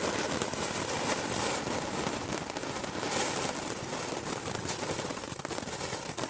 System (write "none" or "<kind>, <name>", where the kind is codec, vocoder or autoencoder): none